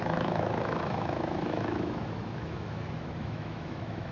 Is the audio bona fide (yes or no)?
no